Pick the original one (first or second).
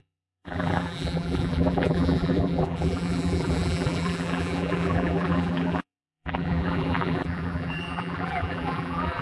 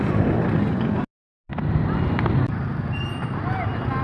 second